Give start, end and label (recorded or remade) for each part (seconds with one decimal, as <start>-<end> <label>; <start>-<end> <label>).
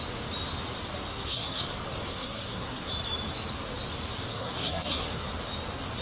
0.0-1.1 recorded; 1.1-1.6 remade; 1.6-2.1 recorded; 2.1-2.9 remade; 2.9-4.3 recorded; 4.3-5.3 remade; 5.3-6.0 recorded